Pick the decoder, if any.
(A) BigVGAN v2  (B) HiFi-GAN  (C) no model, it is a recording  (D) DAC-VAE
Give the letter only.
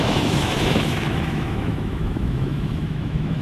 D